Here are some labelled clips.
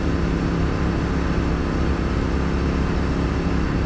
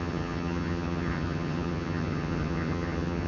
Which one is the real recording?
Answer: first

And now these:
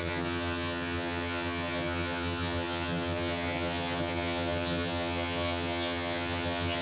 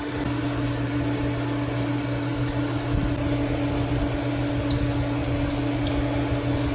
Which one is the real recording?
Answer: second